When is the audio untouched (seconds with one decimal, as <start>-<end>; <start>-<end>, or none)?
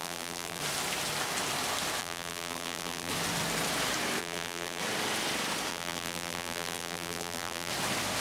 0.6-2.0; 3.1-4.2; 4.8-5.7; 7.7-8.2